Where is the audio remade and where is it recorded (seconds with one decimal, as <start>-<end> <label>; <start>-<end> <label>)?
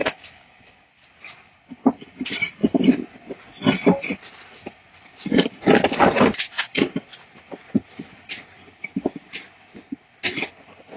0.0-0.9 remade; 0.9-11.0 recorded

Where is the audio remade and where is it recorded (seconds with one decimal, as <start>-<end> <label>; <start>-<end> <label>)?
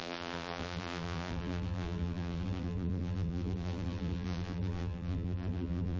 0.0-6.0 remade